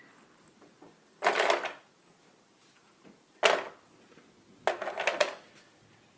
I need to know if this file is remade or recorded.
recorded